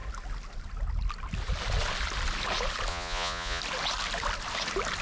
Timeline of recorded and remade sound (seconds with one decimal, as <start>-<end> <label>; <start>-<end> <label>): 0.0-2.9 recorded; 2.9-3.6 remade; 3.6-5.0 recorded